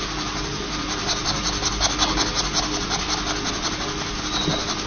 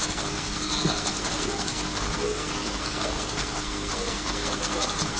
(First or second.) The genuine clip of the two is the first